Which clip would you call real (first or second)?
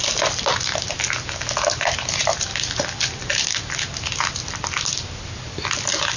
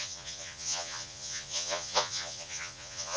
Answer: first